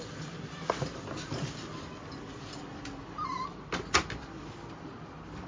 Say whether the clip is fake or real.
real